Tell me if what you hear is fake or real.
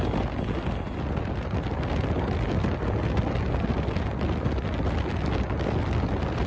real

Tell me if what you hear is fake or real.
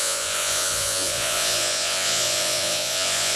fake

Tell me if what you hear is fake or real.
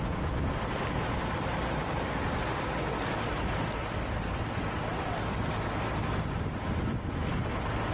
real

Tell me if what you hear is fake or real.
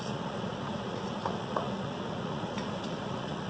fake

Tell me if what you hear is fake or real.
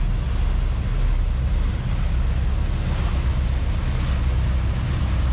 real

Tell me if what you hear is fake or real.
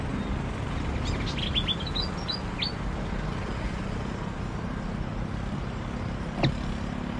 real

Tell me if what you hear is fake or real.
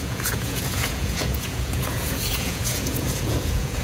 fake